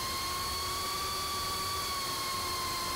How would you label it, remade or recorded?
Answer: recorded